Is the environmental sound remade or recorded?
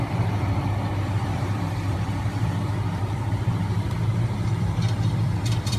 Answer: remade